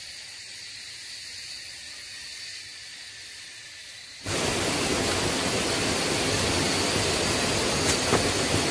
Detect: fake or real real